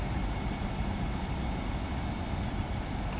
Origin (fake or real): real